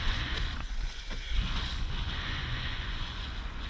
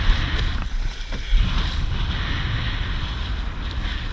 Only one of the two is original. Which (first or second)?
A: second